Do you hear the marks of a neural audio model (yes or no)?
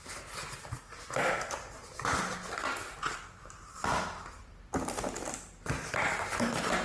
no